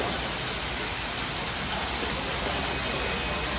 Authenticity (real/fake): real